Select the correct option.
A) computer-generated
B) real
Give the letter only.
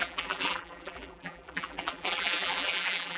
A